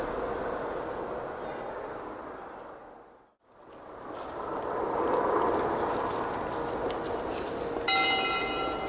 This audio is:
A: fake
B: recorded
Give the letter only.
B